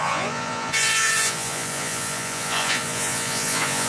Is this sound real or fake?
fake